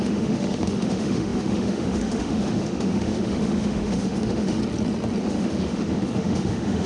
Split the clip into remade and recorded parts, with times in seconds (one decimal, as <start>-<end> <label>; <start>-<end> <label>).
0.0-4.6 remade; 4.6-5.2 recorded; 5.2-6.9 remade

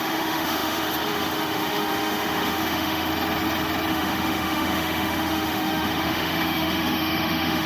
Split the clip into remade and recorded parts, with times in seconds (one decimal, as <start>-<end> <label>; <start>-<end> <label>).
0.0-3.1 remade; 3.1-3.9 recorded; 3.9-7.7 remade

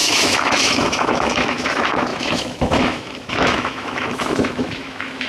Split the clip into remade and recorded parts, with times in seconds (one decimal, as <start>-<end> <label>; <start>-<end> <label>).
0.0-5.3 remade

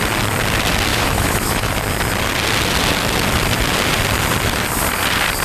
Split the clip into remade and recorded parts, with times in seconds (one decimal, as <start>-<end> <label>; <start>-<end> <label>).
0.0-0.9 recorded; 0.9-1.7 remade; 1.7-5.4 recorded

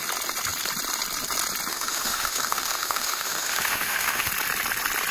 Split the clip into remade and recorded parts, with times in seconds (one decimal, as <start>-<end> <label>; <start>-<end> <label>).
0.0-1.7 recorded; 1.7-4.3 remade; 4.3-5.1 recorded